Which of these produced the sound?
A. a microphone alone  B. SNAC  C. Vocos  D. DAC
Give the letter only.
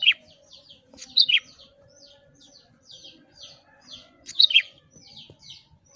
C